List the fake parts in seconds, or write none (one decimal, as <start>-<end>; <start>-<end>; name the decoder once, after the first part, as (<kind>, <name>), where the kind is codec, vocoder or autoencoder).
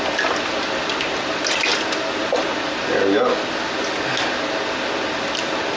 none